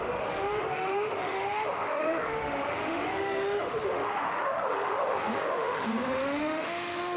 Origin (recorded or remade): remade